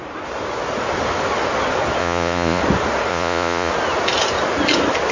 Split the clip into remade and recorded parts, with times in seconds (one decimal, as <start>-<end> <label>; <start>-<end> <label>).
0.0-2.0 recorded; 2.0-2.6 remade; 2.6-3.1 recorded; 3.1-3.7 remade; 3.7-5.1 recorded